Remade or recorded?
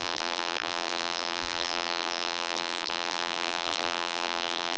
remade